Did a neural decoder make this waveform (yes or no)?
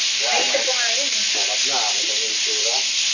no